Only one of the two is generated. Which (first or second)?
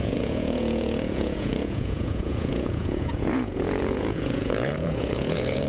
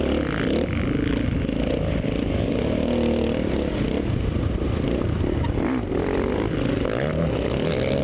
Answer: first